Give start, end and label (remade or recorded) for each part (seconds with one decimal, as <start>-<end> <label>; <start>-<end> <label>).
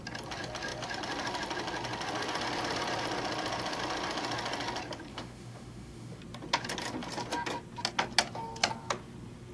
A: 0.0-5.1 recorded; 5.1-6.2 remade; 6.2-9.5 recorded